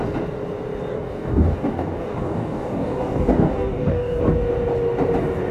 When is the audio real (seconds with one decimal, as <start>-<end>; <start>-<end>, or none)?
0.0-0.9; 4.2-5.5